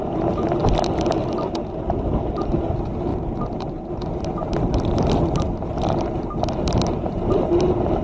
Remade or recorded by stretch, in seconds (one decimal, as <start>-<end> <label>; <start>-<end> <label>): 0.0-8.0 remade